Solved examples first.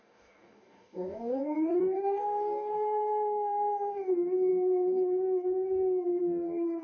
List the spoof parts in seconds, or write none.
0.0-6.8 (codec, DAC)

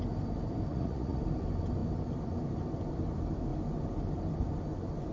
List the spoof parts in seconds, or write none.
0.7-1.2 (vocoder, Vocos)

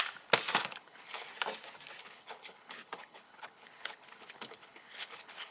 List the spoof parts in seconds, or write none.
0.6-1.3 (codec, HILCodec); 2.0-5.5